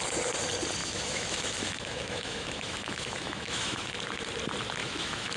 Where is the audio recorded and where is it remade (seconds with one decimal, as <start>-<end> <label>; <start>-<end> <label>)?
0.0-0.8 recorded; 0.8-3.9 remade; 3.9-4.8 recorded; 4.8-5.4 remade